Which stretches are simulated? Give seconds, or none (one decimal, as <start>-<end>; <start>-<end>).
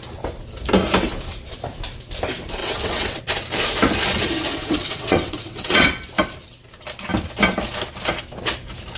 2.6-3.2; 4.6-5.9